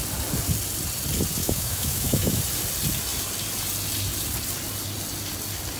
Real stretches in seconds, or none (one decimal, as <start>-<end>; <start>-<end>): 0.0-1.4; 2.4-5.8